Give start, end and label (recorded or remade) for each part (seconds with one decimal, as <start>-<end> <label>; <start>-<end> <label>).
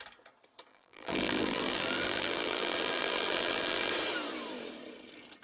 0.0-0.7 recorded; 0.7-3.9 remade; 3.9-5.4 recorded